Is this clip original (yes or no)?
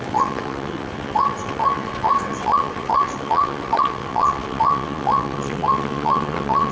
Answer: no